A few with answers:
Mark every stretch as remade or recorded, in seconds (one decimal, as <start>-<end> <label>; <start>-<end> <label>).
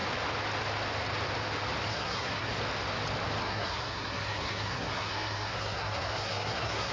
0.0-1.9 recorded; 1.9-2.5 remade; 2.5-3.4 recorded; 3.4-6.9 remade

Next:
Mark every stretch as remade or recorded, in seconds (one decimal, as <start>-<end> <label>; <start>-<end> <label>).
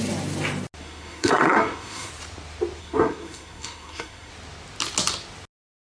0.0-0.8 recorded; 0.8-2.1 remade; 2.1-2.8 recorded; 2.8-4.3 remade; 4.3-5.9 recorded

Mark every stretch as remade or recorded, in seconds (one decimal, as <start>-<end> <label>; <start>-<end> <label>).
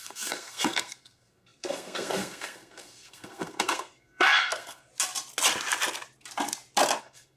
0.0-4.9 remade; 4.9-7.0 recorded; 7.0-7.4 remade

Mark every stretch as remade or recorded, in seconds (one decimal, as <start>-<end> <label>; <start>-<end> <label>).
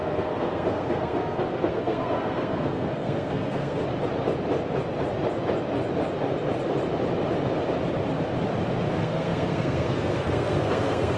0.0-3.8 remade; 3.8-8.9 recorded; 8.9-11.2 remade